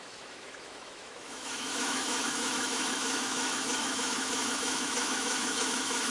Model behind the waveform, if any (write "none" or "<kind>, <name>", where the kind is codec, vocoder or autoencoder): autoencoder, DAC-VAE